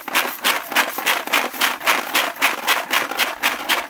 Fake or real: real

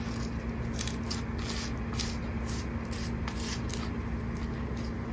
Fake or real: real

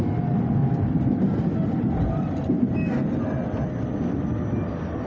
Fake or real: real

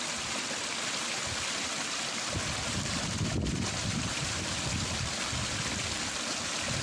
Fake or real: real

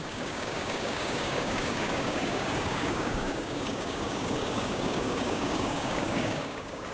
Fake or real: fake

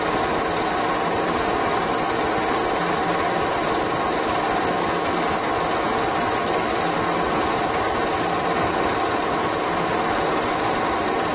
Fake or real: real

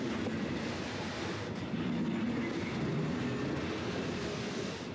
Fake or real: real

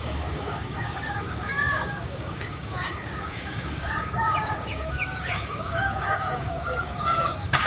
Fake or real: fake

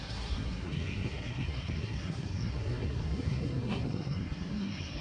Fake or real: fake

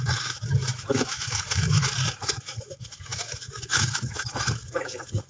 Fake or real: fake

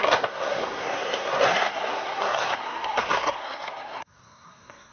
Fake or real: fake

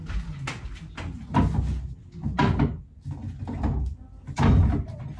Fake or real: real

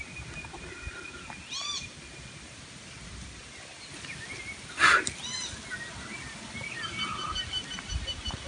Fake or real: real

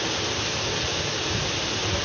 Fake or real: real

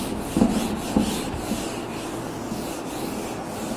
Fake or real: real